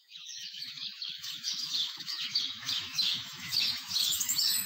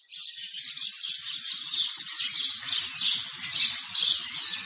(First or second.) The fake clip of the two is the first